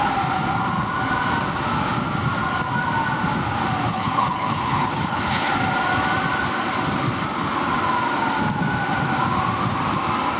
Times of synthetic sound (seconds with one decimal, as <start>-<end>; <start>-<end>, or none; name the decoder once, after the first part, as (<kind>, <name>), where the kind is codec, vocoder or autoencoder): 3.9-5.5 (codec, HILCodec)